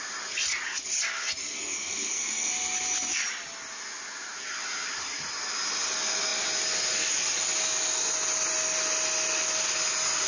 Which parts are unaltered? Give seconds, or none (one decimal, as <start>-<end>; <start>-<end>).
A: 0.0-1.4; 2.5-10.3